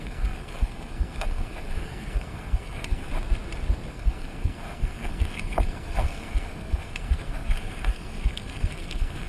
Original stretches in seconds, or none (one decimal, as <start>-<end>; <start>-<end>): 3.1-3.9